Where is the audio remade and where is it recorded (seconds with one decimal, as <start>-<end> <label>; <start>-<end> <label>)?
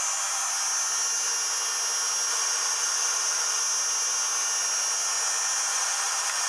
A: 0.0-2.3 recorded; 2.3-3.6 remade; 3.6-5.7 recorded; 5.7-6.5 remade